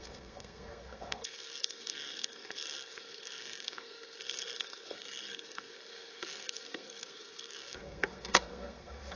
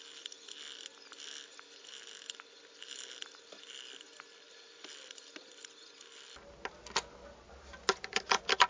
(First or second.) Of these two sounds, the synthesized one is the first